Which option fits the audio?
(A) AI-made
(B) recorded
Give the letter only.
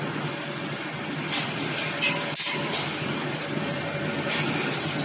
B